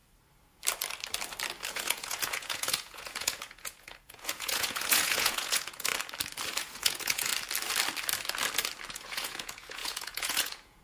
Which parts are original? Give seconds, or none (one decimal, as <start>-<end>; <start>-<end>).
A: 0.0-1.7; 5.9-6.6; 7.3-8.9